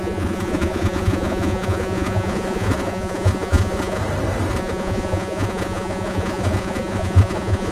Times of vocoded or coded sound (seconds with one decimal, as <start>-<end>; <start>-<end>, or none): 0.0-4.0; 4.5-7.7